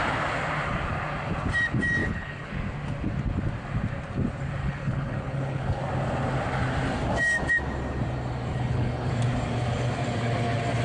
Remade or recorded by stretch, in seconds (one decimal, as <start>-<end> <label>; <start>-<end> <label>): 0.0-2.0 recorded; 2.0-2.5 remade; 2.5-4.6 recorded; 4.6-5.8 remade; 5.8-8.5 recorded; 8.5-9.1 remade; 9.1-10.8 recorded